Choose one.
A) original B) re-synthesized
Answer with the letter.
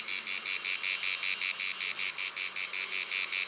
A